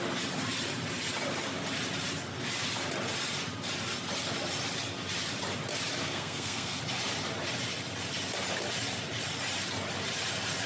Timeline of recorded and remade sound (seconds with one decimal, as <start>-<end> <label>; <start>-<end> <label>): 0.0-6.0 recorded; 6.0-6.8 remade; 6.8-10.7 recorded